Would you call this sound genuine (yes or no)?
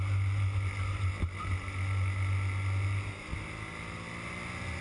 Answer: yes